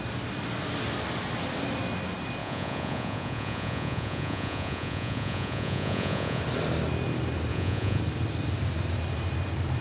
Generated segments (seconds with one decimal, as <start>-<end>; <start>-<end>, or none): 2.4-6.4; 7.5-8.0